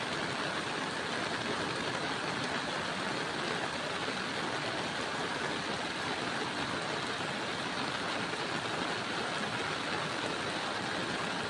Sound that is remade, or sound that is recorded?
recorded